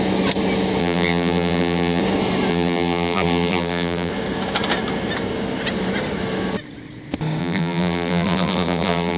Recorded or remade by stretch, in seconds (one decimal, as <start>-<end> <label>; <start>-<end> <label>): 0.0-0.8 recorded; 0.8-2.0 remade; 2.0-2.5 recorded; 2.5-4.1 remade; 4.1-7.4 recorded; 7.4-9.2 remade